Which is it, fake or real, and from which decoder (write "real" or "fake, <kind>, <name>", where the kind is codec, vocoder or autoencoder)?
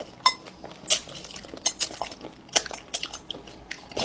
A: real